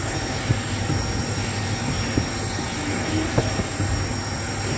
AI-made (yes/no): no